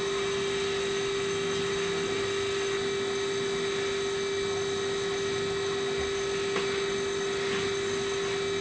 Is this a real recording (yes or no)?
yes